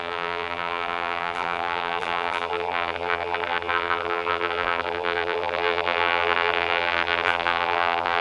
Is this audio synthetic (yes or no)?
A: yes